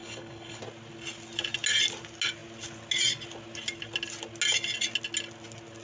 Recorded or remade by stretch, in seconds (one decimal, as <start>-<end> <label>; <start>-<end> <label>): 0.0-0.6 remade; 0.6-5.8 recorded